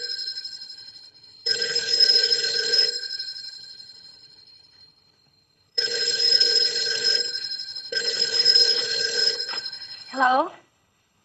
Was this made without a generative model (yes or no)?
no